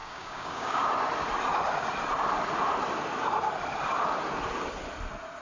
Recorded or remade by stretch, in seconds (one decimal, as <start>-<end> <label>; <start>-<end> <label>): 0.0-0.9 remade; 0.9-5.4 recorded